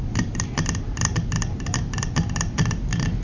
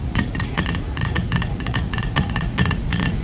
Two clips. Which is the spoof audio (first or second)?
second